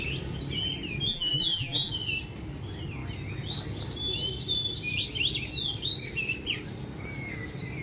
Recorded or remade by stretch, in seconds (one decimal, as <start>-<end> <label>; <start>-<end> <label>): 0.0-1.1 recorded; 1.1-1.9 remade; 1.9-7.8 recorded